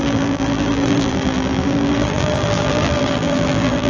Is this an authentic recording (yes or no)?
no